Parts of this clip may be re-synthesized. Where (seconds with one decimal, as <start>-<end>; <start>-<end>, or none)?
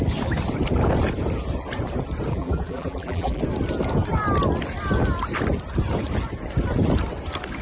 2.3-3.4